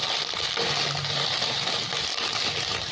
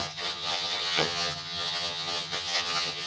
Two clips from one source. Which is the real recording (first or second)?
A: first